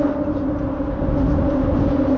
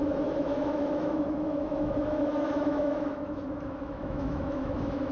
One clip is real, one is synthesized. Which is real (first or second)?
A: first